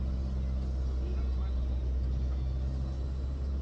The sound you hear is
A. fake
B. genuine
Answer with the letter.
B